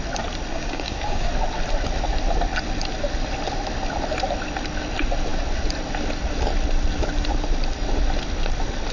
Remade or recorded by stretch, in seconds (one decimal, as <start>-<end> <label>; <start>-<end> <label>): 0.0-0.5 recorded; 0.5-1.3 remade; 1.3-8.9 recorded